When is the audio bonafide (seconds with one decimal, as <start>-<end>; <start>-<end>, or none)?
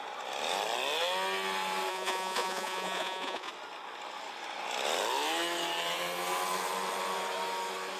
0.0-1.9; 3.5-8.0